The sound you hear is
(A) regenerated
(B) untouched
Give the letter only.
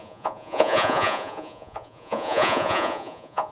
A